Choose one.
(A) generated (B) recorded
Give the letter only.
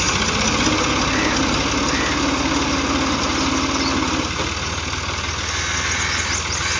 B